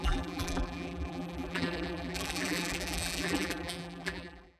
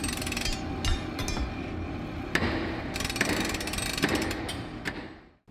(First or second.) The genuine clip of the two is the second